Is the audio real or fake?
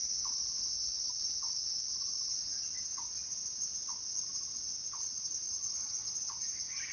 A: real